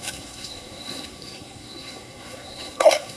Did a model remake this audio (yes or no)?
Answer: yes